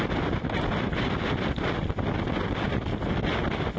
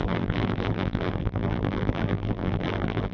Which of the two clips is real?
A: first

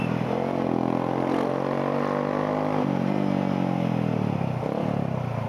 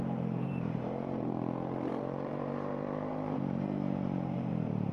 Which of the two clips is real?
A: first